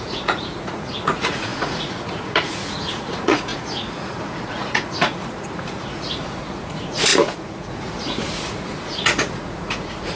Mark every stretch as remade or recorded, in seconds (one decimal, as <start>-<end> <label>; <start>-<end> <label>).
0.0-10.2 remade